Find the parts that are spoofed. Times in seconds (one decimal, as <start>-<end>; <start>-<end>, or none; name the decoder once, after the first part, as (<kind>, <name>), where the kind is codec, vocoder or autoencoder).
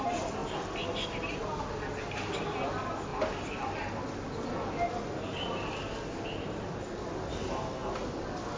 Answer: none